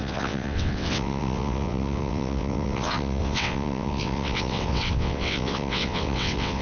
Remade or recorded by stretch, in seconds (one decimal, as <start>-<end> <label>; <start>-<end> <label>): 0.0-6.6 remade